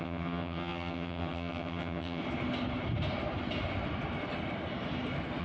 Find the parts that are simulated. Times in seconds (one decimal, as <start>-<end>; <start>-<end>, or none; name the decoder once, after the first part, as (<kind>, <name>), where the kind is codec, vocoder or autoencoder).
0.0-2.2 (vocoder, HiFi-GAN)